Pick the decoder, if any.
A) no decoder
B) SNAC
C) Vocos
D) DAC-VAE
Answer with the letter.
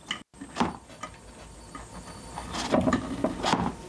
A